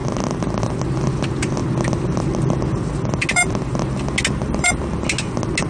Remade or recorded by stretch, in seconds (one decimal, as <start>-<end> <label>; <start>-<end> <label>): 0.0-5.7 recorded

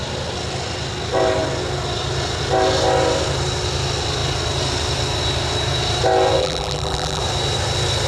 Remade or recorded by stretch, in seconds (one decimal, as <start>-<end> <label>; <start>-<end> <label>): 0.0-6.4 recorded; 6.4-7.2 remade; 7.2-8.1 recorded

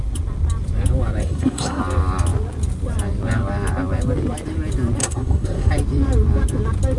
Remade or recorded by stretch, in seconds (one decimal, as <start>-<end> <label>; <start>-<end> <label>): 0.0-1.2 recorded; 1.2-1.8 remade; 1.8-5.0 recorded; 5.0-5.7 remade; 5.7-7.0 recorded

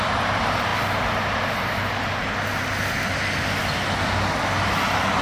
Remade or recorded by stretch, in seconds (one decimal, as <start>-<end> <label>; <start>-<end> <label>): 0.0-5.2 recorded

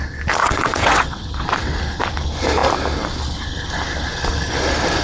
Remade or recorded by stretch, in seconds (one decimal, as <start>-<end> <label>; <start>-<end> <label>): 0.0-0.4 recorded; 0.4-1.8 remade; 1.8-5.0 recorded

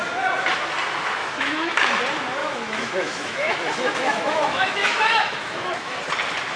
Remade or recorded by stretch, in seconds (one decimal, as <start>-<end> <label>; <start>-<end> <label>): 0.0-1.2 recorded; 1.2-2.0 remade; 2.0-2.4 recorded; 2.4-6.0 remade; 6.0-6.6 recorded

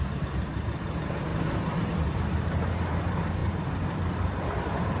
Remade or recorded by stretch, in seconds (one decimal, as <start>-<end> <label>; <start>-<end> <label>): 0.0-1.3 remade; 1.3-1.8 recorded; 1.8-5.0 remade

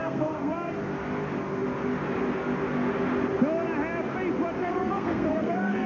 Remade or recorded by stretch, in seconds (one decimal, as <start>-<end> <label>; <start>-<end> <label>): 0.0-0.7 remade; 0.7-4.6 recorded; 4.6-5.9 remade